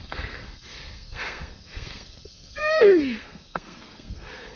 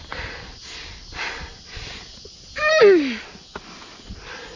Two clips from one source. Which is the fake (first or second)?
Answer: first